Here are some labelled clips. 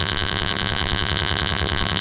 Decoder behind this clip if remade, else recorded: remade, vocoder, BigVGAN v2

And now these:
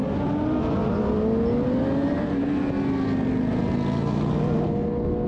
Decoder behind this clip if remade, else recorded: recorded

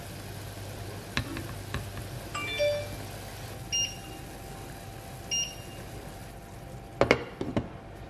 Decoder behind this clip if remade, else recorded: recorded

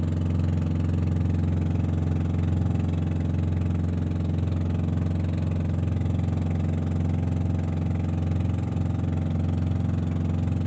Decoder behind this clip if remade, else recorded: recorded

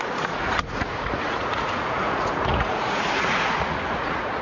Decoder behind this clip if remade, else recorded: remade, vocoder, Vocos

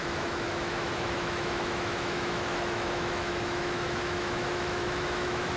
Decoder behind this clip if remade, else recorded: remade, autoencoder, DAC-VAE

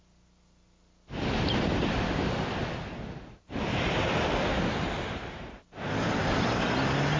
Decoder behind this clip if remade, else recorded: recorded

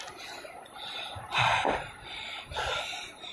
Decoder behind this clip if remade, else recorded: remade, vocoder, BigVGAN v2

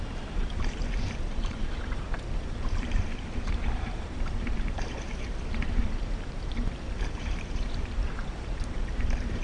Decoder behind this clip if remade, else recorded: remade, vocoder, BigVGAN v2